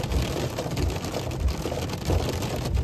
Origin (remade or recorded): recorded